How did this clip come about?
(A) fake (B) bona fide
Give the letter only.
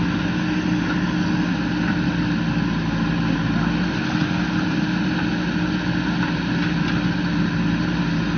B